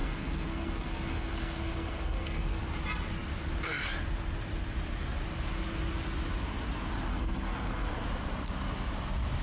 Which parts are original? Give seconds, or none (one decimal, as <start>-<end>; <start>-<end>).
2.6-7.1; 7.9-9.4